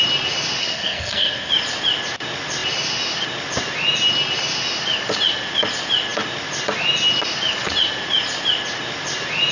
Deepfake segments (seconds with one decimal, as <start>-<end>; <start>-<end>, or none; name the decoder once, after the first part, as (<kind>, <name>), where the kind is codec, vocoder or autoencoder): 0.6-1.5 (codec, SNAC)